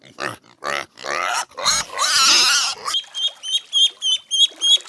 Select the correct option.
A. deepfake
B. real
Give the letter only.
B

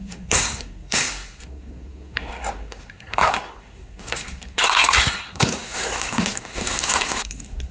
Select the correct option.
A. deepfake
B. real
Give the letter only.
A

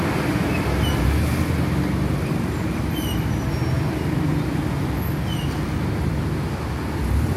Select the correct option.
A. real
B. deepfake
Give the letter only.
A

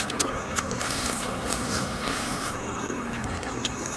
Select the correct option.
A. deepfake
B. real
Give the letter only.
A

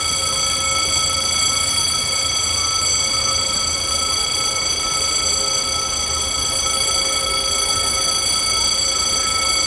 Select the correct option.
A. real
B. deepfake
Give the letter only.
A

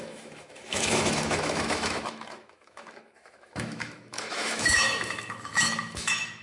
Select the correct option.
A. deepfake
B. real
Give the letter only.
A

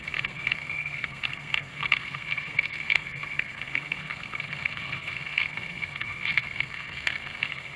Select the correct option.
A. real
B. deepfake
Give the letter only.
B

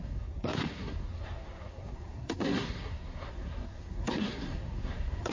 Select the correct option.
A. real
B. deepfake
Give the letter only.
B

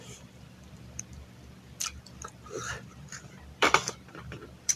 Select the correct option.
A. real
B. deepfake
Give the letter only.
B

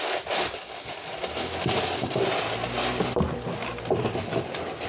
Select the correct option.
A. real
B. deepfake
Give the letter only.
A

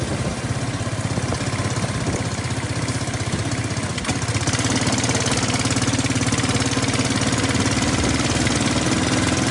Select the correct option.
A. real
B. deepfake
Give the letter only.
A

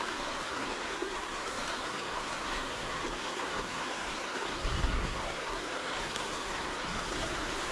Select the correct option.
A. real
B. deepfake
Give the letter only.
B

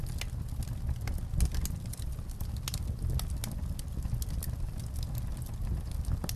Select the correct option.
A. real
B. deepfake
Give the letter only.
A